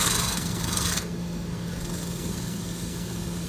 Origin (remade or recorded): remade